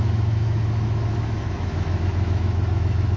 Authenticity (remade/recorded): remade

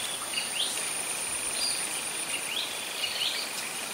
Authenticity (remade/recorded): remade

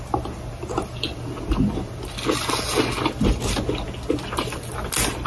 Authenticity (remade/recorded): recorded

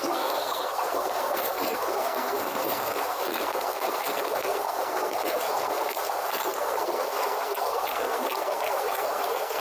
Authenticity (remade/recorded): remade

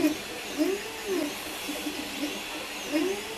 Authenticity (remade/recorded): recorded